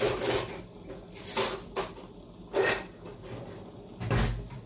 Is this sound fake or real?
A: real